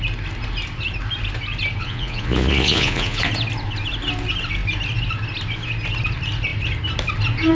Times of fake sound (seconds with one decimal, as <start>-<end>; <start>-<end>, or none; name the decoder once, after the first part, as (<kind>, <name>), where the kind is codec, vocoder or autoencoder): 1.8-3.3 (vocoder, Vocos)